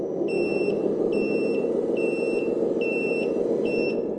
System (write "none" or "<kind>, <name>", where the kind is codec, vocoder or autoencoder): none